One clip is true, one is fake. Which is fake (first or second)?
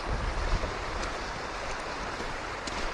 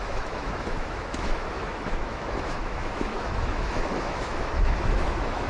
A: second